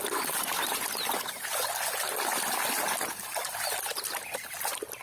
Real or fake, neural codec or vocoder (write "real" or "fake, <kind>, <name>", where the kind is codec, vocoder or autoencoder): real